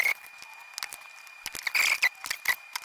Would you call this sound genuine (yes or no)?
yes